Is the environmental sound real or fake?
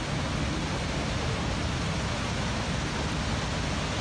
real